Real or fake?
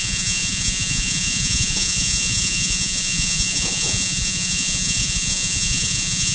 fake